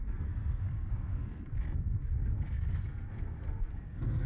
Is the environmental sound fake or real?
fake